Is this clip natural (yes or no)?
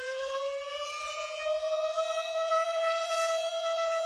no